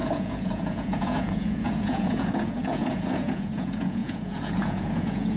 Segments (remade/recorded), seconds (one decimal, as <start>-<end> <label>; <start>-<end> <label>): 0.0-5.4 remade